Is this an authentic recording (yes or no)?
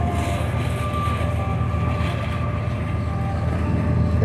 yes